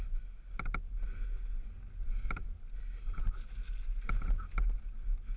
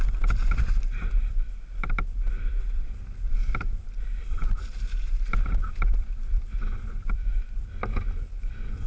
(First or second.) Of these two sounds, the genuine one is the first